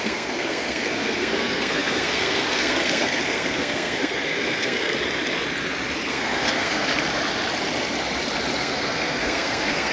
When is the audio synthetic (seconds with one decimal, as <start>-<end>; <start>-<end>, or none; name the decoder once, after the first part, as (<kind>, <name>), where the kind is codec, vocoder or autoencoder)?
0.0-4.9 (codec, SNAC); 6.1-6.9; 8.6-9.9